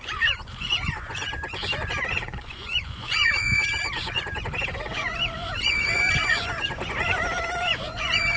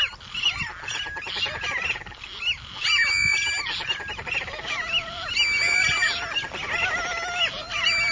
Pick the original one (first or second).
second